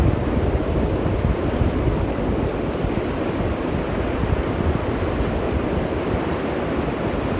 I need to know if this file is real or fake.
fake